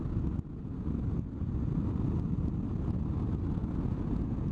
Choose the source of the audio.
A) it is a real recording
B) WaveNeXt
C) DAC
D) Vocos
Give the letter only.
A